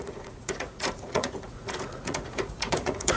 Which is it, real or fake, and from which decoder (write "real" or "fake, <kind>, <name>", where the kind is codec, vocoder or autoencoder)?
fake, vocoder, Vocos